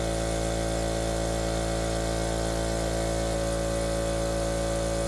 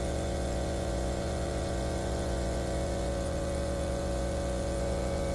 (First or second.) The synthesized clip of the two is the second